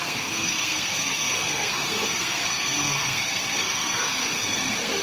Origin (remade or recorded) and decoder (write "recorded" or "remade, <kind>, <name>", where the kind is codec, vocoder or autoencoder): remade, codec, SNAC